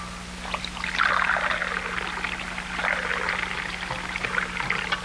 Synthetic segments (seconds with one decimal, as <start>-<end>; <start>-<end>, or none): none